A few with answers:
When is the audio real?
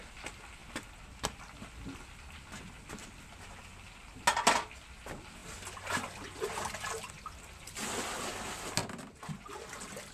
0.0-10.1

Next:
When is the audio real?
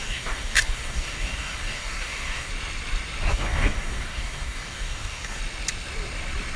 2.5-3.3; 5.4-6.6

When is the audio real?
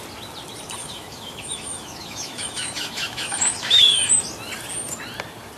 0.0-0.8; 4.2-5.6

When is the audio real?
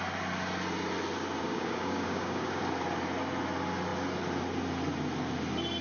0.0-1.4; 2.6-5.8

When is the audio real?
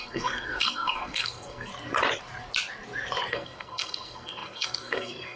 1.7-3.3